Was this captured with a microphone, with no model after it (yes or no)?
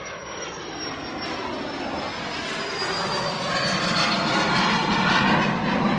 yes